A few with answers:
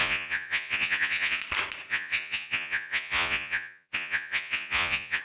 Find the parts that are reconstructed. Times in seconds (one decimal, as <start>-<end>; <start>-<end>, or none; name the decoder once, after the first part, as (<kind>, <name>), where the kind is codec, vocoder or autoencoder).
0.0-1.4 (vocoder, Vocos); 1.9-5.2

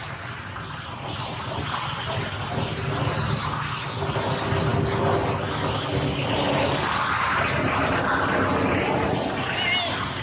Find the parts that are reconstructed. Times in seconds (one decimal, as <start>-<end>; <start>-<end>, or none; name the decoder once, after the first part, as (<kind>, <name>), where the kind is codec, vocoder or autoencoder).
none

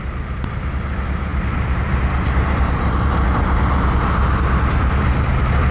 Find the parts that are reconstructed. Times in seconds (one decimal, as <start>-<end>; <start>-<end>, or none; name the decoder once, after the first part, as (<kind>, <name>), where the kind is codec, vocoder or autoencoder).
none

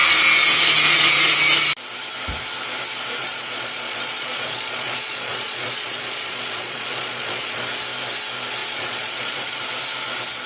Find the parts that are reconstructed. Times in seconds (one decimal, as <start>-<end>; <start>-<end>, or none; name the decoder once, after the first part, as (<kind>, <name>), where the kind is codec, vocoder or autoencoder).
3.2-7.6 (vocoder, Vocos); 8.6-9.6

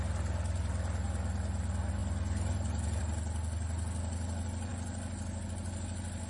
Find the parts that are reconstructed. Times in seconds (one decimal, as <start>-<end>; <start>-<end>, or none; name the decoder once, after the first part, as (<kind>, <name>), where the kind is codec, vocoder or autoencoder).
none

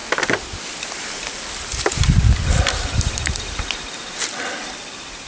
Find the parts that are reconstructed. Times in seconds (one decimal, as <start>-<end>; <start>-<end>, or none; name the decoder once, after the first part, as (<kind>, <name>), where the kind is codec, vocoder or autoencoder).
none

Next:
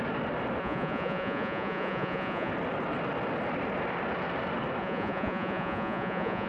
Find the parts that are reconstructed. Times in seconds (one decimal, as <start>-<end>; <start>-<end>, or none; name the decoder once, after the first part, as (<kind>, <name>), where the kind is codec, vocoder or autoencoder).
0.6-2.5 (vocoder, Vocos); 4.8-6.5

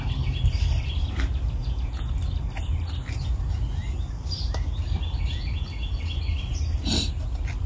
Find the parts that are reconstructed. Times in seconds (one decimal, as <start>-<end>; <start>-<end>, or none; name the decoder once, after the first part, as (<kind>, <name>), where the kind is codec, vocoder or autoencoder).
1.6-2.2 (vocoder, Vocos)